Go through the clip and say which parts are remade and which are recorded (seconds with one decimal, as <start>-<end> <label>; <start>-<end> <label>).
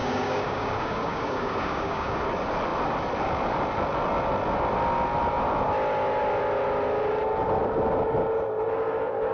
0.0-2.2 remade; 2.2-9.3 recorded